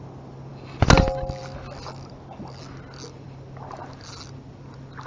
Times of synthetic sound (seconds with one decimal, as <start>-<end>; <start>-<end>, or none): none